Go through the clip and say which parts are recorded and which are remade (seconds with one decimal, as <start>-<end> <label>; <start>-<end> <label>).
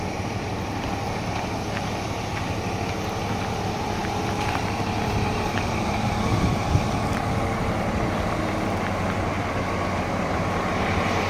0.0-11.3 recorded